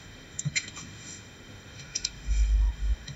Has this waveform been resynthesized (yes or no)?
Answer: yes